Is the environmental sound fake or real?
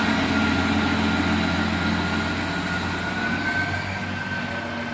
real